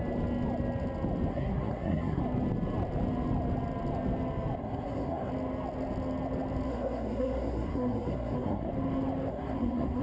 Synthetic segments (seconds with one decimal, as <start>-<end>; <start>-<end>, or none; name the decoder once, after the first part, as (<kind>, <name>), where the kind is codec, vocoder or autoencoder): 1.3-2.2 (codec, SNAC); 4.6-5.3; 6.7-8.7; 9.3-10.0